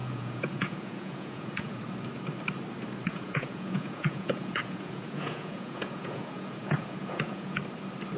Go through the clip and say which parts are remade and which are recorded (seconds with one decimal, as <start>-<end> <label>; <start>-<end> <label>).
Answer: 0.0-1.8 remade; 1.8-3.1 recorded; 3.1-7.6 remade; 7.6-8.2 recorded